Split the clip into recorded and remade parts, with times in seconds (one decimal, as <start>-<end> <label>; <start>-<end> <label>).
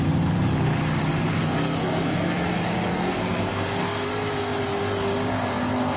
0.0-1.3 recorded; 1.3-2.5 remade; 2.5-2.9 recorded; 2.9-4.1 remade; 4.1-6.0 recorded